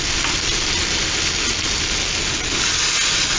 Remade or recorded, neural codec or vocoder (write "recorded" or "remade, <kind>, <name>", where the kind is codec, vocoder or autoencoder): recorded